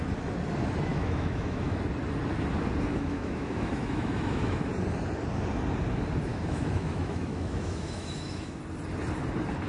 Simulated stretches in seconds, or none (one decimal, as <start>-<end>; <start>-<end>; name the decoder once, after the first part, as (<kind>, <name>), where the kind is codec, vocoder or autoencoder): 0.9-1.8 (autoencoder, DAC-VAE); 2.9-4.7; 6.3-8.6

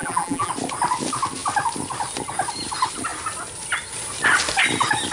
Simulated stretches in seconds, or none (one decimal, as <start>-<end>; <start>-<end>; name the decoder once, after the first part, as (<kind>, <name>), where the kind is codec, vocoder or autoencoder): 0.0-0.5 (vocoder, BigVGAN v2)